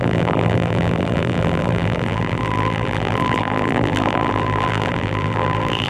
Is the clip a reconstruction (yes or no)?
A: yes